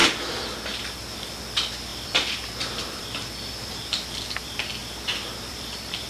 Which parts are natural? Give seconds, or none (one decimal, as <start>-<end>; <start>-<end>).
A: 0.0-1.9; 4.2-4.8